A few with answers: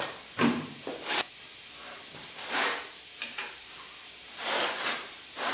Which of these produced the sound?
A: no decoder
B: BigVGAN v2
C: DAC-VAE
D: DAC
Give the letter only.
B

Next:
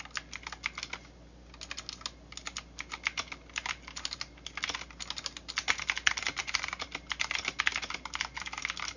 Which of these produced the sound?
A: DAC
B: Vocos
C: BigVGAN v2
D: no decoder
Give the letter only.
D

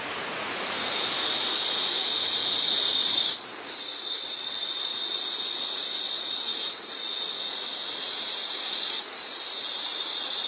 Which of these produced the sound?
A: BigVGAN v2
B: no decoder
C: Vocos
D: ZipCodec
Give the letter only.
C